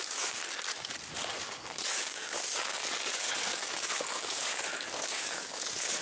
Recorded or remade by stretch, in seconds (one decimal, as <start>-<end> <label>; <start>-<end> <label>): 0.0-0.4 remade; 0.4-1.4 recorded; 1.4-6.0 remade